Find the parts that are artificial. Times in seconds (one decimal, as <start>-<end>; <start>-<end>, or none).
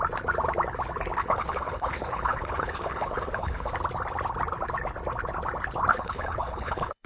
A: 1.2-3.7; 5.9-7.1